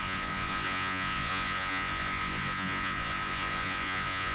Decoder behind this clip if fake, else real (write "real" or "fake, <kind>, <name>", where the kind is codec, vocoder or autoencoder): fake, vocoder, Vocos